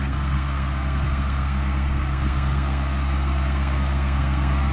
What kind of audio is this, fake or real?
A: fake